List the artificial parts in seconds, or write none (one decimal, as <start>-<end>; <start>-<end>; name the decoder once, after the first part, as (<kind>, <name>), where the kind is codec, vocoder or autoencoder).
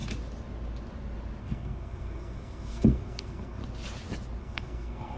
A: 1.4-3.6 (codec, SNAC); 4.4-5.2